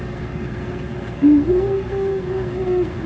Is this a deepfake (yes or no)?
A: yes